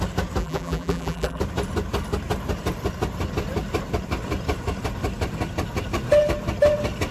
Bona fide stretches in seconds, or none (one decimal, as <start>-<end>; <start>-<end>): 0.0-0.4; 1.4-7.1